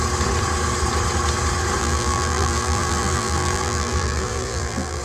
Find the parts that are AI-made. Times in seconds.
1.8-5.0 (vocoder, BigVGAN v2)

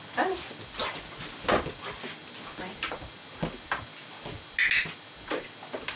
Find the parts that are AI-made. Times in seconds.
none

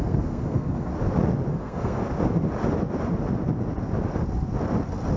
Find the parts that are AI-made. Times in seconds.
0.0-0.9 (codec, SNAC); 1.5-2.0